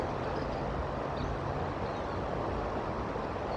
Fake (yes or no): no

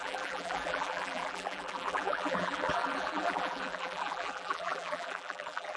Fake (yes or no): yes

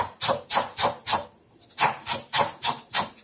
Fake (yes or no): no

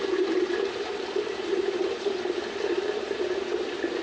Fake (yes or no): no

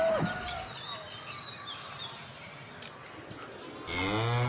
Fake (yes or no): no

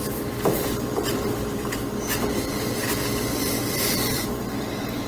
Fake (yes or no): yes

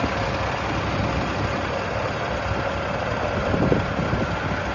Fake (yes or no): no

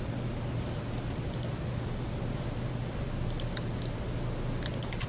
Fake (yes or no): no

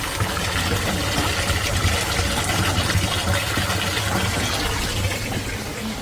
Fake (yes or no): no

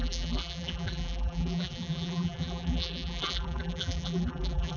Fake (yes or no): yes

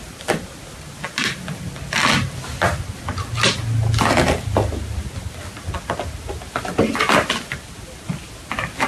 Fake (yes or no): no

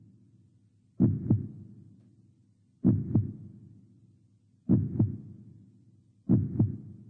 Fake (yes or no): no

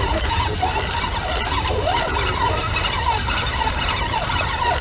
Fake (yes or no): yes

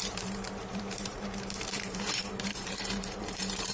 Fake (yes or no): yes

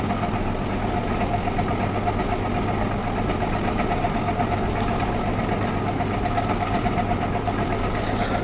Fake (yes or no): no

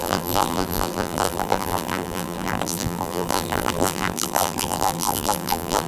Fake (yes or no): yes